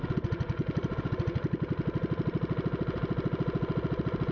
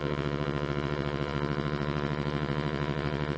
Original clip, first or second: first